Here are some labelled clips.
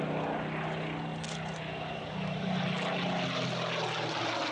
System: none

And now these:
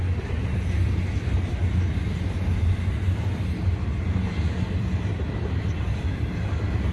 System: none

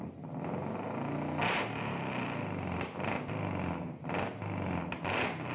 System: none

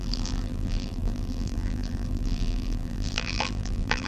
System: vocoder, BigVGAN v2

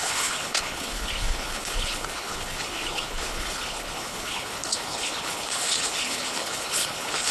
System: codec, HILCodec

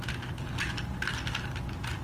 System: none